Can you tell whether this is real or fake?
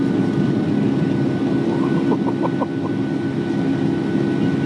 real